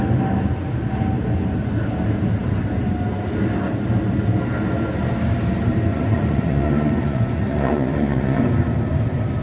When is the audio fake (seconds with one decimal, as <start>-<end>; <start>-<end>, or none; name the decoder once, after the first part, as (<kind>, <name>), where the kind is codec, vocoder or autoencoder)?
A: 5.9-8.4 (vocoder, Vocos)